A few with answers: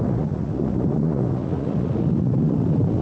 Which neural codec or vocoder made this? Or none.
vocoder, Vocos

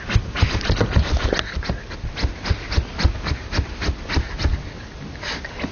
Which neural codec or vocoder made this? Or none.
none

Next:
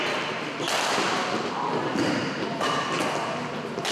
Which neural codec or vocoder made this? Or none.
none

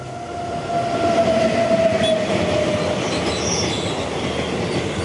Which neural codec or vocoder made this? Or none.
none